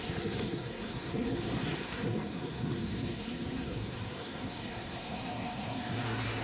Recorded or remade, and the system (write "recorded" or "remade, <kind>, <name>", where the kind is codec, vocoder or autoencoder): remade, codec, SNAC